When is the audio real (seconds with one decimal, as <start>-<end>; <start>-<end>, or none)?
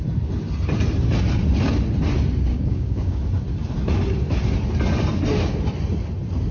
0.0-2.5; 3.2-6.5